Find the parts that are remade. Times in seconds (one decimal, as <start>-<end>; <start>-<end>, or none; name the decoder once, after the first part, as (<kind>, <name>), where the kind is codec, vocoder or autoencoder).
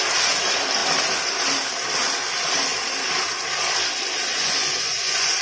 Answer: 4.3-5.4 (vocoder, Vocos)